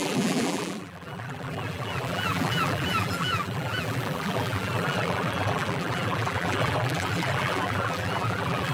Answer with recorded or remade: remade